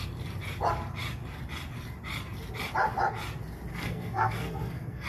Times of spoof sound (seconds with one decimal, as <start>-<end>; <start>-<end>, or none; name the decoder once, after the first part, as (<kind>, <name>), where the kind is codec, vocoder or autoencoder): 3.7-5.1 (codec, SNAC)